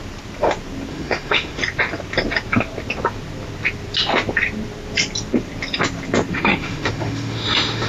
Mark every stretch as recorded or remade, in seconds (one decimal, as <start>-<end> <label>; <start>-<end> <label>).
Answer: 0.0-0.9 recorded; 0.9-1.6 remade; 1.6-6.3 recorded; 6.3-7.9 remade